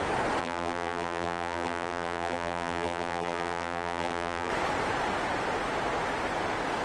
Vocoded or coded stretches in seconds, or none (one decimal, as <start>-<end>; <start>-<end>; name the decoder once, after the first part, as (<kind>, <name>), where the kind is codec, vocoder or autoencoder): 0.4-4.5 (vocoder, BigVGAN v2)